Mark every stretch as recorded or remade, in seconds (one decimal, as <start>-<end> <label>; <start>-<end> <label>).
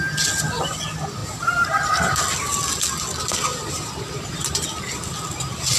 0.0-1.2 recorded; 1.2-2.2 remade; 2.2-3.5 recorded; 3.5-4.0 remade; 4.0-5.8 recorded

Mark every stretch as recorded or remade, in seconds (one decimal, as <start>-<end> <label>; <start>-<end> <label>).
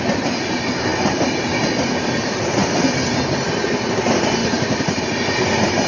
0.0-4.4 recorded; 4.4-5.0 remade; 5.0-5.9 recorded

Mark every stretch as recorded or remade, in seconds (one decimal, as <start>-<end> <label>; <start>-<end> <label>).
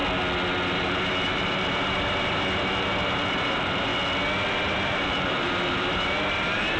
0.0-0.7 recorded; 0.7-3.9 remade; 3.9-4.5 recorded; 4.5-6.8 remade